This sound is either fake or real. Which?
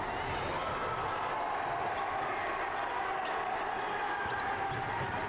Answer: real